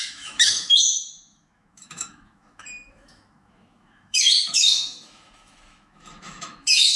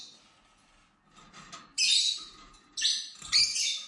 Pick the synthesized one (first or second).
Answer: first